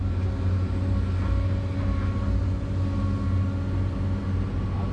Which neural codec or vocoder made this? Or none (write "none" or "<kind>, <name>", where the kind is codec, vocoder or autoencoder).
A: none